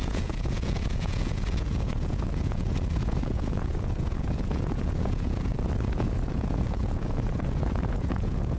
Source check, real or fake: fake